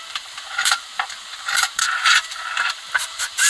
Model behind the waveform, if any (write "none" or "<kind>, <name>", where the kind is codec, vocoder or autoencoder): vocoder, BigVGAN v2